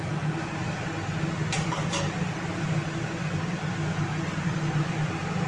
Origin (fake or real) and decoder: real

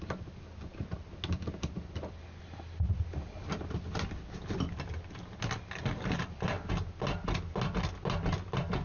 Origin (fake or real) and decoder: real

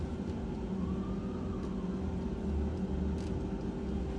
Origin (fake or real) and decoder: real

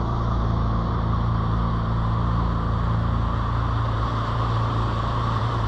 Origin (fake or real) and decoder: fake, vocoder, BigVGAN v2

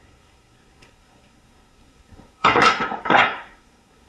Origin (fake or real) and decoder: fake, codec, SNAC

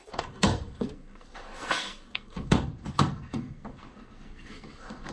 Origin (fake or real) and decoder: fake, codec, SNAC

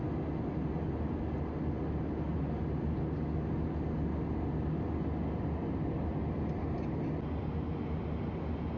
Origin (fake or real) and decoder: real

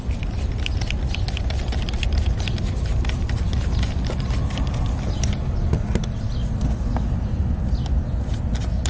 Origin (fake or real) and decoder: real